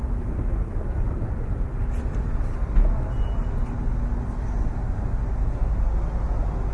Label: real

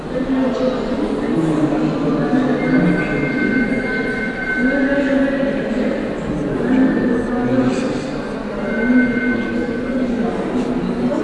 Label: real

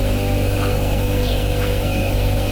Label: fake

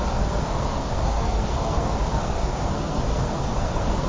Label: fake